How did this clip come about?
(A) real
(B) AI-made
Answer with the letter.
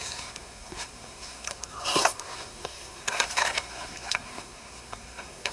B